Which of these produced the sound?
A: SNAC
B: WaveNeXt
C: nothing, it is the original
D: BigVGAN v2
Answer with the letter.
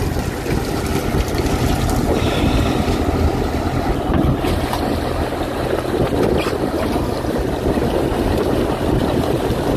C